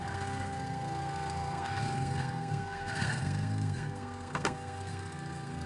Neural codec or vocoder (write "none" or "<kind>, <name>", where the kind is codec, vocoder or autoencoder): codec, SNAC